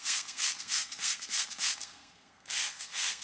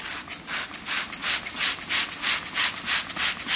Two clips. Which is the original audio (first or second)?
second